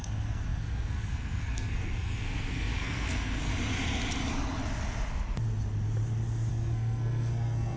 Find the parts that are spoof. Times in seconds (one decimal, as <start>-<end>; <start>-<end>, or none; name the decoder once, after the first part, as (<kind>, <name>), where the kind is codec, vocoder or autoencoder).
0.0-3.5 (codec, SNAC); 6.5-7.8